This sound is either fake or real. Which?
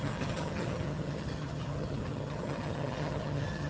fake